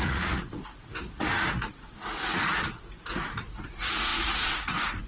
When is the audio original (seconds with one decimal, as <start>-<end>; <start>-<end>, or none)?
none